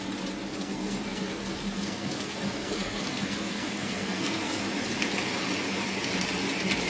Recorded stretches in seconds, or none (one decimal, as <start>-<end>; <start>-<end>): 0.0-0.5; 4.6-6.9